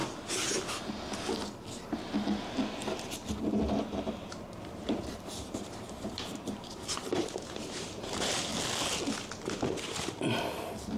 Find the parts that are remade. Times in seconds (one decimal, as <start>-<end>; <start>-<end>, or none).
3.9-8.5; 9.8-11.0